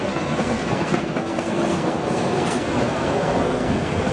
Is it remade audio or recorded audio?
remade